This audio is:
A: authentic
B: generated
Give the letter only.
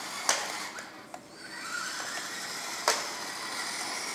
A